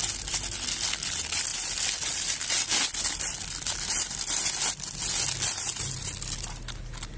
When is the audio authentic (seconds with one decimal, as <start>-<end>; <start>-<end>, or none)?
0.0-7.2

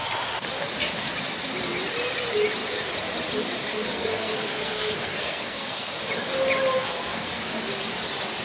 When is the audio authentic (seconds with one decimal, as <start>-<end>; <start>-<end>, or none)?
0.0-3.7; 6.0-6.7; 7.8-8.4

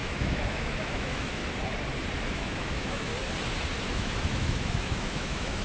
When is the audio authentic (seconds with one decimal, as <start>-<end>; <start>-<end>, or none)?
1.4-2.3; 3.1-3.8

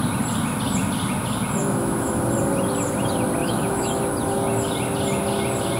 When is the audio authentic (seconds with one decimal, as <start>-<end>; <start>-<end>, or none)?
0.0-1.6; 2.2-3.4; 4.0-5.8

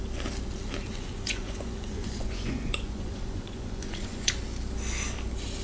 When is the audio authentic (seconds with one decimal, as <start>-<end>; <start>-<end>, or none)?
0.0-0.9; 4.3-5.6

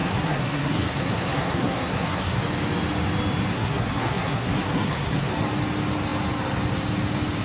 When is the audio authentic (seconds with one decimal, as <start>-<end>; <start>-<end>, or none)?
2.4-3.5; 5.3-7.4